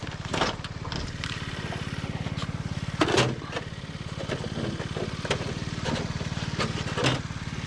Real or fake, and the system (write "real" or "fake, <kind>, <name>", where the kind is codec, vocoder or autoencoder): real